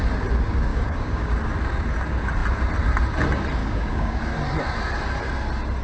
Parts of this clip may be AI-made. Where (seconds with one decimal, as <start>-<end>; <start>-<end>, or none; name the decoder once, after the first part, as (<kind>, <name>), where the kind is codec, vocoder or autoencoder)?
0.7-1.3 (codec, DAC); 3.6-4.2